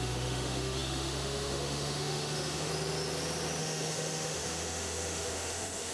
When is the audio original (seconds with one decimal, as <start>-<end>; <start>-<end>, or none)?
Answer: 2.7-3.6